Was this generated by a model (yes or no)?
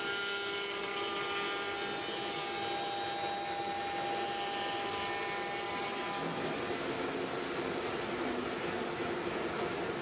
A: no